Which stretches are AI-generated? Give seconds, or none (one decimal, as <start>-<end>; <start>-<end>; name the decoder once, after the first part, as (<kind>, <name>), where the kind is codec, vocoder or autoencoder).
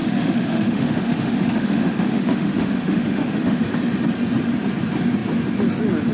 0.0-3.6 (autoencoder, DAC-VAE)